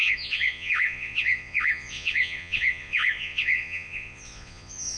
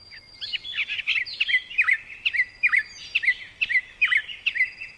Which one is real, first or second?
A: second